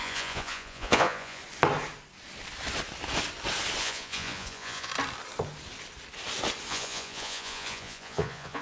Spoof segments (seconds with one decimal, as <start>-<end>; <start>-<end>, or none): 0.0-1.4; 3.8-4.9; 6.7-8.6